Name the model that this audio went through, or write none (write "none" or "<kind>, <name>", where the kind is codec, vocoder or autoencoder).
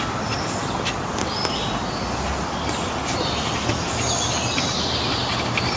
none